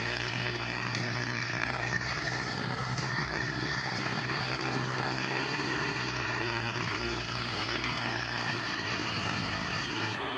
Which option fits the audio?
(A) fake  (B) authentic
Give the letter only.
A